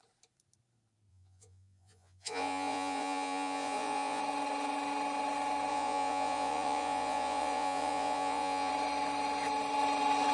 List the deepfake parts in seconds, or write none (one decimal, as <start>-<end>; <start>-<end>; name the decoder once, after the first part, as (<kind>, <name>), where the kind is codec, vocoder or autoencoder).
1.1-4.2 (vocoder, Vocos); 5.7-8.7